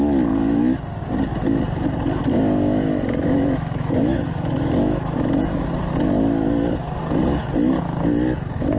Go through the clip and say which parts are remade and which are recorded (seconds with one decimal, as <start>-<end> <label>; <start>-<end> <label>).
0.0-2.3 recorded; 2.3-5.7 remade; 5.7-8.8 recorded